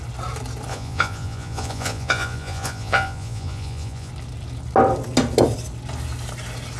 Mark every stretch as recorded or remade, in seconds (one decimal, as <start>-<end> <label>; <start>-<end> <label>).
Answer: 0.0-0.7 recorded; 0.7-4.1 remade; 4.1-6.8 recorded